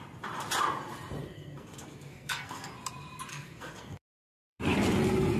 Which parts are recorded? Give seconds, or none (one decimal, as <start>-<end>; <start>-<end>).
0.0-1.2; 2.7-3.3; 4.6-5.4